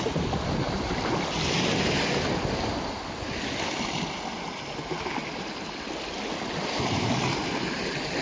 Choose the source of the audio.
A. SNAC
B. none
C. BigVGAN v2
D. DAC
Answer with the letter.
B